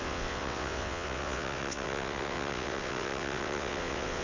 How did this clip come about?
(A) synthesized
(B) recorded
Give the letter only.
A